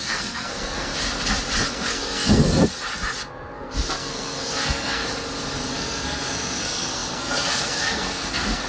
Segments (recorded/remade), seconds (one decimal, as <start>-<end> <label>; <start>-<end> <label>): 0.0-0.9 remade; 0.9-1.7 recorded; 1.7-2.7 remade; 2.7-3.3 recorded; 3.3-5.0 remade; 5.0-5.7 recorded; 5.7-8.7 remade